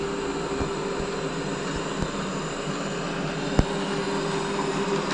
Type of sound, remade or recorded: recorded